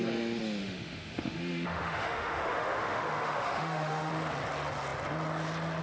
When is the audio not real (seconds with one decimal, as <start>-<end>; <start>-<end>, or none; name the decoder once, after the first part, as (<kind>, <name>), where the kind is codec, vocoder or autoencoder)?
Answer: 0.6-4.1 (autoencoder, DAC-VAE)